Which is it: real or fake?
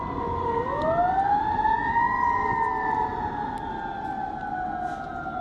real